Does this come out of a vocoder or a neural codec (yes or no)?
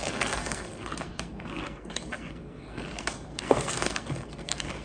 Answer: yes